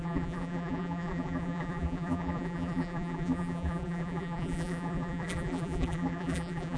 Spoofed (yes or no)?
yes